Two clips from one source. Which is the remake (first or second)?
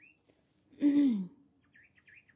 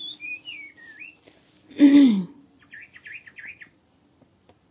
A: second